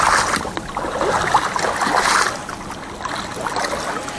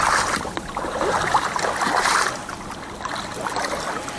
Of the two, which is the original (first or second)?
first